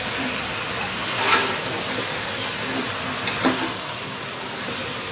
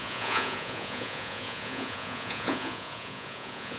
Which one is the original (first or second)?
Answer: first